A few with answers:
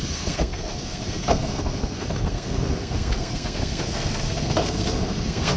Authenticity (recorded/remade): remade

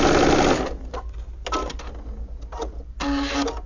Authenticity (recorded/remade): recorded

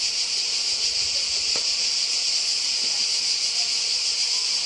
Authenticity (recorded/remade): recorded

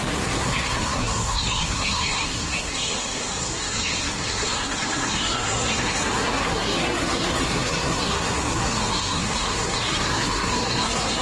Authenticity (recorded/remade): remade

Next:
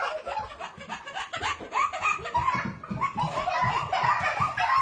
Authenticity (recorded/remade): recorded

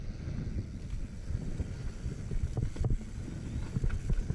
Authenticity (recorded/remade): recorded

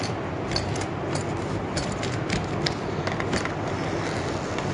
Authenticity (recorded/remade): recorded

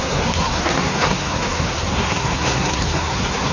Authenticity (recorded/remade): remade